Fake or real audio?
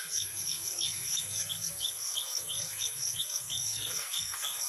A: fake